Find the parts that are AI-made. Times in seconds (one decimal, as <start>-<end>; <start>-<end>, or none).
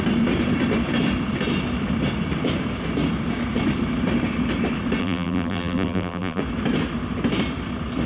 5.0-6.4